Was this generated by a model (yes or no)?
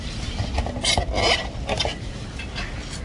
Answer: no